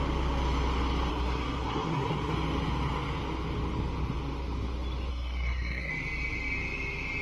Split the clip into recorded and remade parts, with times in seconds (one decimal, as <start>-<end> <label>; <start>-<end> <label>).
0.0-1.1 recorded; 1.1-2.3 remade; 2.3-5.1 recorded; 5.1-5.9 remade; 5.9-7.2 recorded